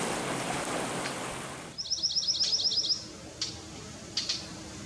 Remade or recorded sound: recorded